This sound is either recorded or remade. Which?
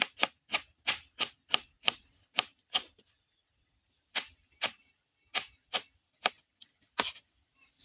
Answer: recorded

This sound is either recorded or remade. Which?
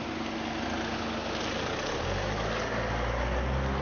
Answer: recorded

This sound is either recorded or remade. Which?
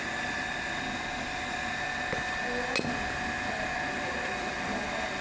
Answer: recorded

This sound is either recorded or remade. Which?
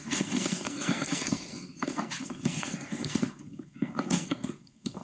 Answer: remade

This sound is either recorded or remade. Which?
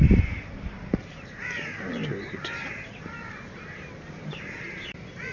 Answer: remade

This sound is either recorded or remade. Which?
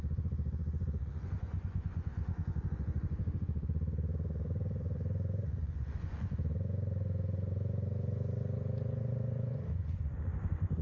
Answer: remade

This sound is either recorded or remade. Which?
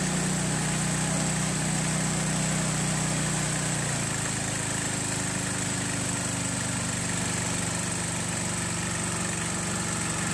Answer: recorded